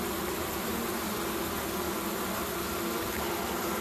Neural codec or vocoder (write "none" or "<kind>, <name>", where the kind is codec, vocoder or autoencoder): none